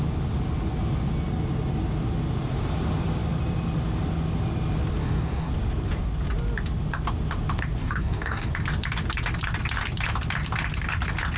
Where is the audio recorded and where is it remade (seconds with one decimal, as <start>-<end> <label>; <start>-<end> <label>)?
0.0-5.0 recorded; 5.0-5.5 remade; 5.5-7.8 recorded; 7.8-8.5 remade; 8.5-11.4 recorded